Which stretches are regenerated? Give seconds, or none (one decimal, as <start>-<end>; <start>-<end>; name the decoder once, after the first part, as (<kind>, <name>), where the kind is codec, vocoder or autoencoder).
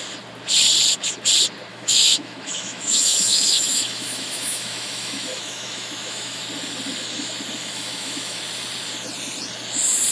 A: 1.7-6.4 (autoencoder, DAC-VAE); 7.6-8.4